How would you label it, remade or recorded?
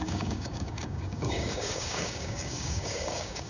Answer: remade